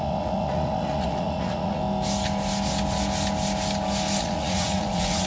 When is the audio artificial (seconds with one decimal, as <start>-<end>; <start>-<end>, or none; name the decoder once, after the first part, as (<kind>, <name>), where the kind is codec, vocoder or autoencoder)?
0.0-1.8 (vocoder, Vocos); 4.2-5.3